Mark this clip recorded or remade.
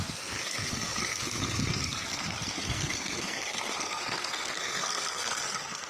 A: remade